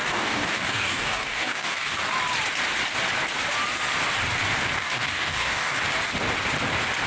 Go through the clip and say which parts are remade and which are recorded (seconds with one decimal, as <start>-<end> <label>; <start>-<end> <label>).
0.0-2.0 remade; 2.0-4.8 recorded; 4.8-5.8 remade; 5.8-7.1 recorded